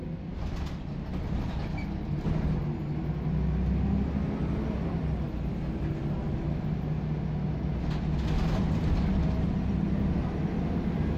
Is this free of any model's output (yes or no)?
yes